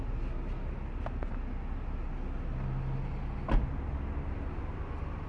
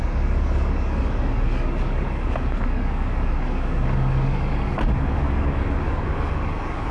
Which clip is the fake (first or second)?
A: second